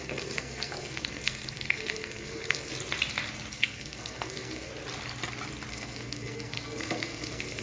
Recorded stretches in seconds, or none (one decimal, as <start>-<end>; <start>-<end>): 2.7-3.5; 4.7-5.7